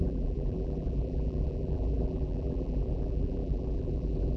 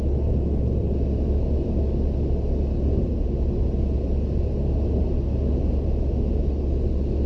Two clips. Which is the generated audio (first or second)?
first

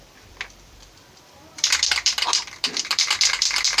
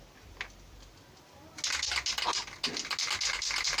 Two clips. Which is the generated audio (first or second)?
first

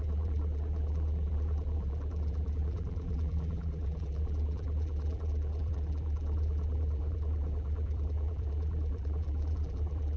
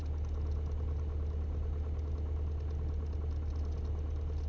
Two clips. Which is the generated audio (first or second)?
first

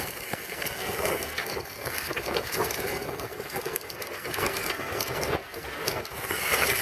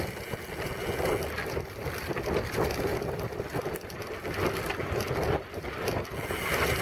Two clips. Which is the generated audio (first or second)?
first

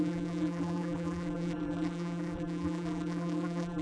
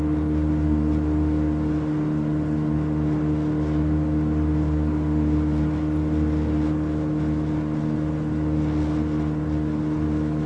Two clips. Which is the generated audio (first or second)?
first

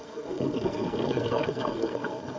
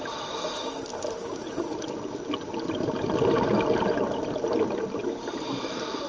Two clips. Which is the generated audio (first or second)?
first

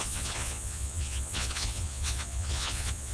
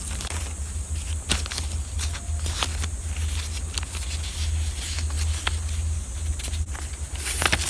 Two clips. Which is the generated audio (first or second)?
first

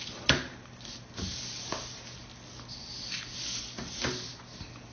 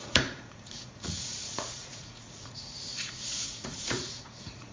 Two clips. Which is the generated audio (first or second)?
second